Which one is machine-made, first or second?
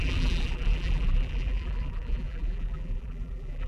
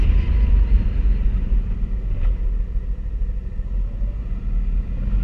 first